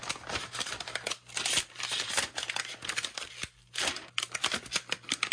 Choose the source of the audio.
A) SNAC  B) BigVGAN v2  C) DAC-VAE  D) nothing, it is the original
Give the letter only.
D